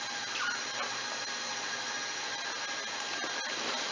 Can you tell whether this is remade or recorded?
recorded